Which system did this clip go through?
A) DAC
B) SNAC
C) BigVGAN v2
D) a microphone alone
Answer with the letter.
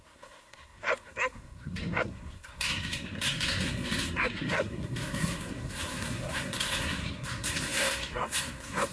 B